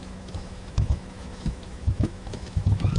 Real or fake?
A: fake